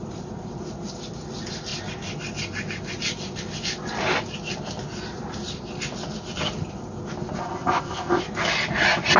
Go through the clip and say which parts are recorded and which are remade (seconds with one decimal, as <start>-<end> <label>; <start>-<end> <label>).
0.0-7.4 recorded; 7.4-8.2 remade; 8.2-9.2 recorded